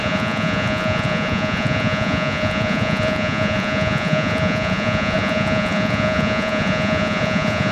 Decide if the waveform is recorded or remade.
remade